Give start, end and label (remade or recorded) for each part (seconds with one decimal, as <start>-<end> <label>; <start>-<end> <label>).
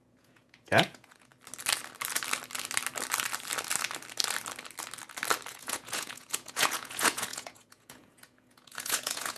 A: 0.0-1.3 remade; 1.3-5.5 recorded; 5.5-9.4 remade